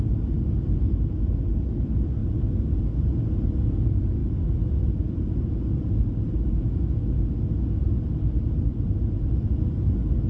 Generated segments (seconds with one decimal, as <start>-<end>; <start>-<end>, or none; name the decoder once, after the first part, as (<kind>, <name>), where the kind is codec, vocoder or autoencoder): 4.2-6.7 (vocoder, BigVGAN v2); 8.7-9.3